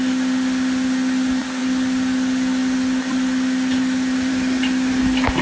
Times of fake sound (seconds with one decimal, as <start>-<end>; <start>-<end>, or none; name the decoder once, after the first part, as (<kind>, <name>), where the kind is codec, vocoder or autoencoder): none